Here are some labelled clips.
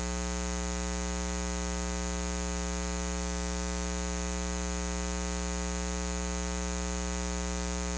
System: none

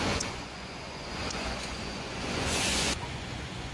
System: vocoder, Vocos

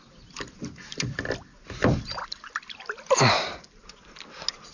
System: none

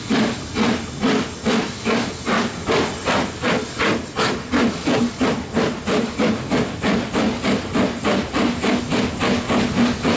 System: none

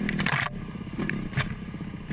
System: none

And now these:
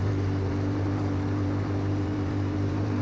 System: vocoder, BigVGAN v2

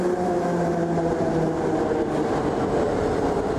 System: none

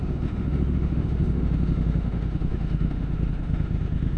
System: autoencoder, DAC-VAE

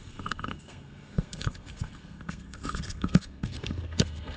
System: codec, SNAC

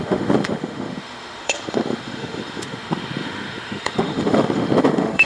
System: autoencoder, DAC-VAE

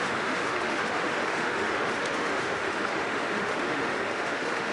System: autoencoder, DAC-VAE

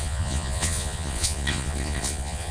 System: vocoder, Vocos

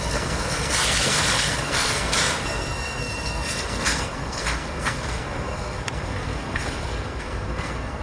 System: codec, SNAC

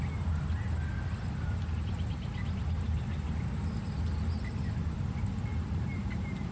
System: none